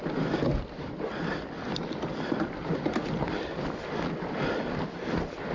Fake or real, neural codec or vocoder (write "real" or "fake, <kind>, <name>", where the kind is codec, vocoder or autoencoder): fake, vocoder, BigVGAN v2